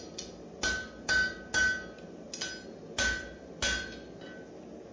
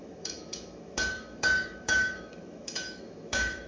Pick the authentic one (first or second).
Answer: first